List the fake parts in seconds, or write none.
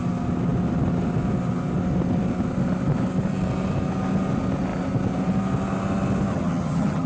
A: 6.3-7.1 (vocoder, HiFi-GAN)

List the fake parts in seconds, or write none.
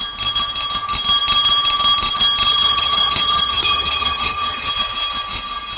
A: 2.5-4.7 (vocoder, HiFi-GAN)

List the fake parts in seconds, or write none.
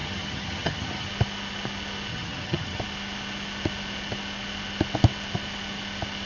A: 0.0-1.1 (vocoder, HiFi-GAN); 2.1-2.8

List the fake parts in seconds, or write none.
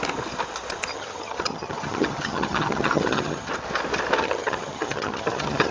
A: 0.9-3.5 (vocoder, HiFi-GAN); 4.2-5.7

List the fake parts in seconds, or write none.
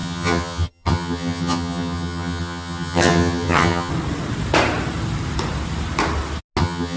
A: 0.0-3.9 (vocoder, HiFi-GAN); 6.6-7.0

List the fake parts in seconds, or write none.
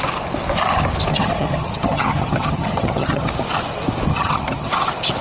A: 1.1-3.3 (vocoder, HiFi-GAN); 4.1-4.7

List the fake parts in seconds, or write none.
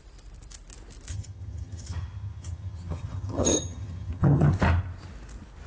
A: 1.1-4.5 (vocoder, HiFi-GAN)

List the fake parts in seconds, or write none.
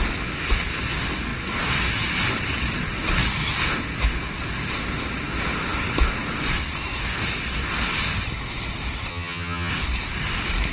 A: 9.1-9.7 (vocoder, HiFi-GAN)